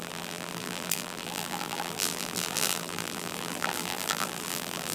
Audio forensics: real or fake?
fake